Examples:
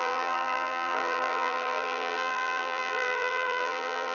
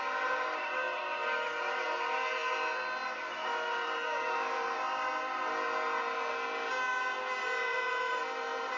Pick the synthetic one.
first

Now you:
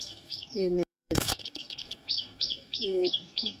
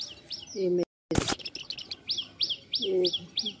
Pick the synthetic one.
first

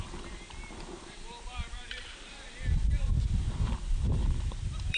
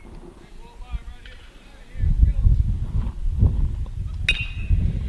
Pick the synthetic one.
first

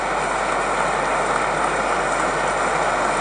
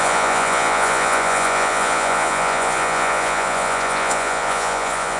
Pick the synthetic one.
second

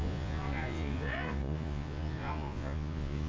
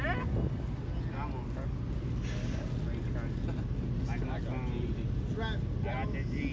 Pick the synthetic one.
first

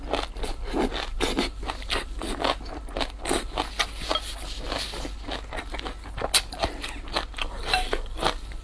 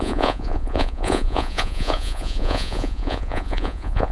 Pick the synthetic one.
second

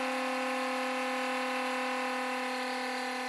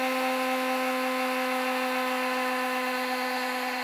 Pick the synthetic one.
second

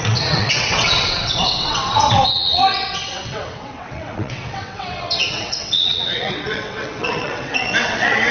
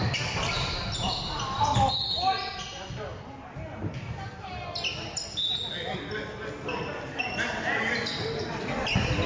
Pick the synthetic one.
first